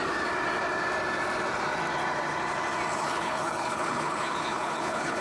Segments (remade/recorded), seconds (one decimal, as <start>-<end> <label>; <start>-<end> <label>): 0.0-2.9 recorded; 2.9-5.2 remade